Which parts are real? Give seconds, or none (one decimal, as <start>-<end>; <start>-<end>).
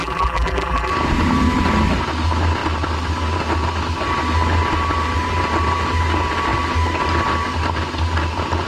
0.9-8.7